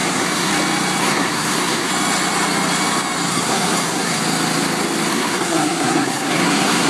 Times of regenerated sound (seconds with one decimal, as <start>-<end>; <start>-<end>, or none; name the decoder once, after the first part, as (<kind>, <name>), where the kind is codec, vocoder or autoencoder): 0.0-0.5 (codec, SNAC); 1.0-1.9; 3.3-4.2; 5.1-6.9